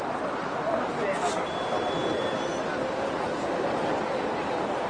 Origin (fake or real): fake